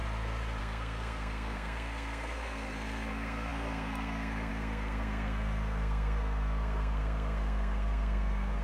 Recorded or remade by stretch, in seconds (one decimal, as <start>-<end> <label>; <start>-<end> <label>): 0.0-0.6 recorded; 0.6-8.6 remade